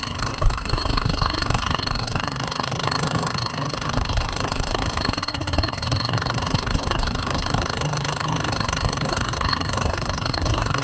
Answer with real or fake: fake